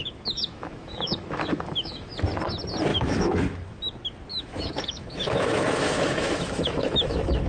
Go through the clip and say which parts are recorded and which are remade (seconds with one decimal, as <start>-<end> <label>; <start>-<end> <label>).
0.0-2.1 remade; 2.1-2.9 recorded; 2.9-3.8 remade; 3.8-4.3 recorded; 4.3-7.5 remade